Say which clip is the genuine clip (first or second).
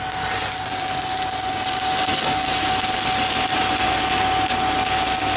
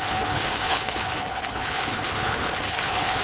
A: first